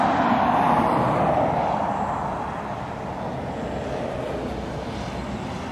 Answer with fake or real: real